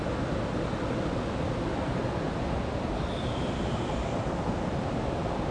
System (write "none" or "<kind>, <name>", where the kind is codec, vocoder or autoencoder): none